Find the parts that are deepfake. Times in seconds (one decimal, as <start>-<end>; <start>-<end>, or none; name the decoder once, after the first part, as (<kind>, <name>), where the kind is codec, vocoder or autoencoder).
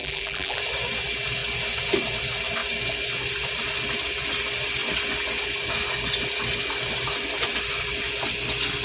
0.0-0.6 (vocoder, BigVGAN v2)